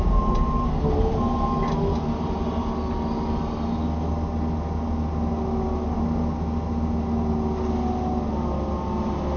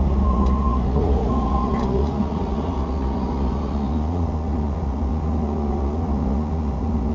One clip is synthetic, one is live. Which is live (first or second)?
first